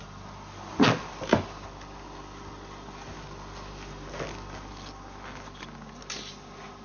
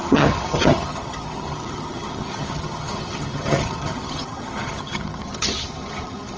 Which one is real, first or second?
first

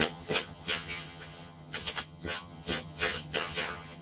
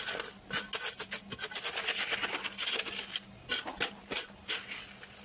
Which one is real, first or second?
second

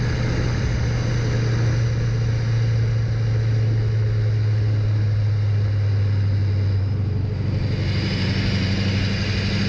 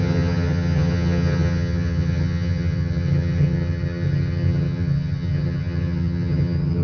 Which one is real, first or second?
first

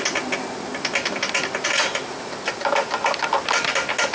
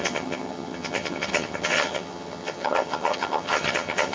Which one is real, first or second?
first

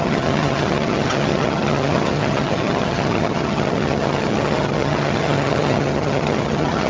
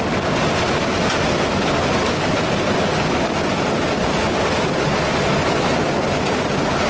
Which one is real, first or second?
second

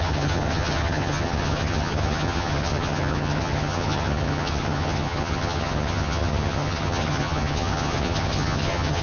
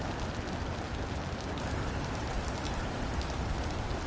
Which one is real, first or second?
second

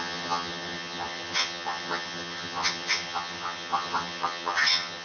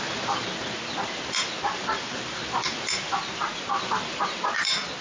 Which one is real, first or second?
second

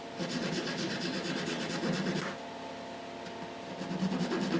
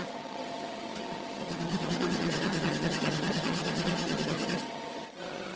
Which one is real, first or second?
first